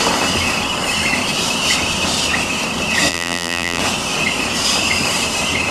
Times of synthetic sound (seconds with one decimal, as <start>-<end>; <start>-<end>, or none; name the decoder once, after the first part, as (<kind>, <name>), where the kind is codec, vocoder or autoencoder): 3.1-3.8 (vocoder, BigVGAN v2)